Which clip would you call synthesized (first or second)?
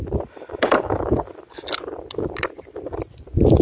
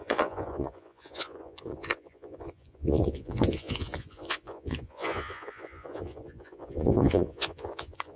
second